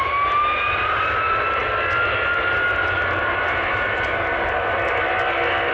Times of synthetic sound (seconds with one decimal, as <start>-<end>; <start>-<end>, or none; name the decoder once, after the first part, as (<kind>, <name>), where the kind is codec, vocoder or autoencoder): none